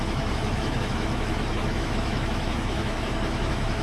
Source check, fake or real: fake